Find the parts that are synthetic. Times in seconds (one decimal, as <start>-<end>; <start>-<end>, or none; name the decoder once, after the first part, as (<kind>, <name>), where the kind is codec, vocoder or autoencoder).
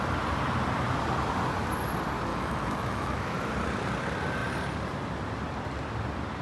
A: 2.3-3.5 (autoencoder, DAC-VAE)